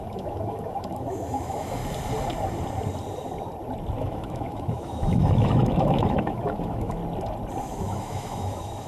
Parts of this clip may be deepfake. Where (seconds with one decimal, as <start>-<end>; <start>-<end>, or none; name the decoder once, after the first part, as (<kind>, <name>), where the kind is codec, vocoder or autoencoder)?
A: 0.0-1.8 (autoencoder, DAC-VAE); 4.0-7.0; 7.6-8.9